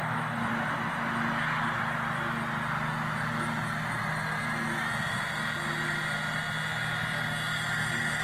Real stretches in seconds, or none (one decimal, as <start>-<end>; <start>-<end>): 0.0-8.2